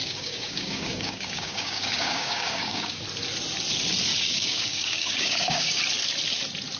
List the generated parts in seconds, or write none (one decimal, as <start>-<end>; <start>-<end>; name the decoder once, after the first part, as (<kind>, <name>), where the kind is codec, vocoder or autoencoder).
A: 0.0-3.0 (codec, DAC); 4.1-5.8